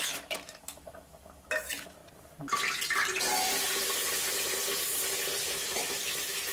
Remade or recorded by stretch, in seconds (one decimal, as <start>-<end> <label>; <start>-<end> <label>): 0.0-2.0 remade; 2.0-5.5 recorded; 5.5-6.5 remade